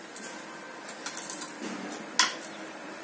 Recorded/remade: recorded